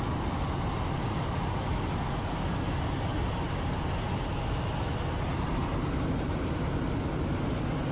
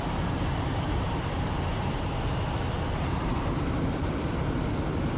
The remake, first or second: second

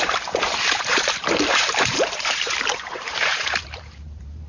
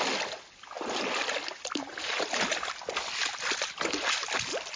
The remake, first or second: first